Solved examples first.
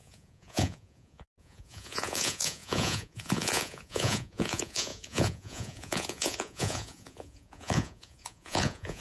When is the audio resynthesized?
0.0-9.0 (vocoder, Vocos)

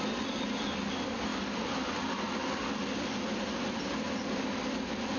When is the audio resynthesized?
none

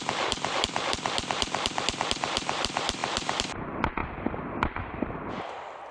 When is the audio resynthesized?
0.0-5.9 (vocoder, BigVGAN v2)

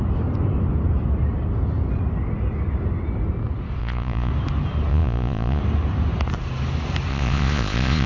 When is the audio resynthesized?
3.8-4.3 (vocoder, Vocos); 4.9-5.6; 7.1-8.1